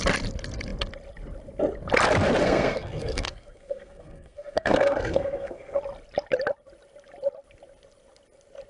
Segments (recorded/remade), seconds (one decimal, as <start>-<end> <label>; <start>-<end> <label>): 0.0-2.4 recorded; 2.4-5.8 remade; 5.8-8.7 recorded